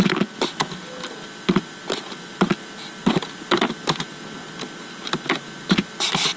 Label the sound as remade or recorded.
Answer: recorded